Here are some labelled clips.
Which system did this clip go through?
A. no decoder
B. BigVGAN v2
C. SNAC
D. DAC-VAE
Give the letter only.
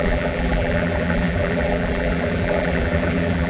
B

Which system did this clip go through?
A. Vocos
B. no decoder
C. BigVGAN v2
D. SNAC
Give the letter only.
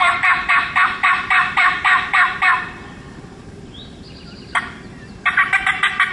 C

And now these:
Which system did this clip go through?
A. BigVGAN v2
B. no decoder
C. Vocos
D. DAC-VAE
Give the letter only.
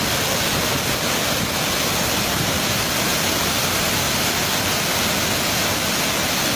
B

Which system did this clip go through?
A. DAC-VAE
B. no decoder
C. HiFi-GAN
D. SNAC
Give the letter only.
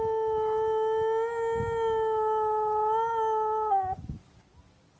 B